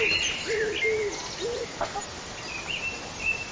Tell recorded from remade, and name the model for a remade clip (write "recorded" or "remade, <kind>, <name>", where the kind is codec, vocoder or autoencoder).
recorded